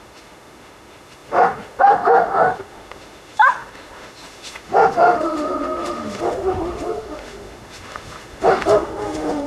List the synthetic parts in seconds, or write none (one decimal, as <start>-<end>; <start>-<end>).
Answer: 0.0-9.5